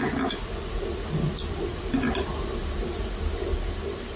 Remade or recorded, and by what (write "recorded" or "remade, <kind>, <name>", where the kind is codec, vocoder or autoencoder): recorded